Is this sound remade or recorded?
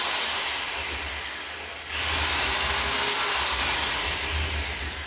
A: recorded